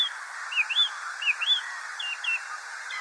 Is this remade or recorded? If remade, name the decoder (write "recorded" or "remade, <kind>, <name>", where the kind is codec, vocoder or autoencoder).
recorded